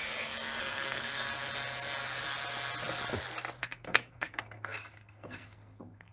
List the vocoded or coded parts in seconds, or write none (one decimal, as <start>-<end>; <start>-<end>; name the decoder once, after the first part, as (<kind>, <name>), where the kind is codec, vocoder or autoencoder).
0.6-1.3 (codec, SNAC); 3.6-6.1